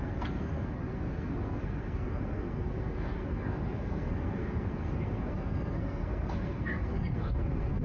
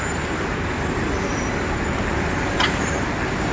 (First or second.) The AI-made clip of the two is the first